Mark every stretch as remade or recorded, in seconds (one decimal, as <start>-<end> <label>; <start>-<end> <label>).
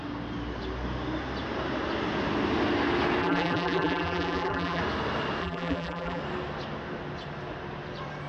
0.0-3.2 recorded; 3.2-4.8 remade; 4.8-5.4 recorded; 5.4-6.2 remade; 6.2-8.3 recorded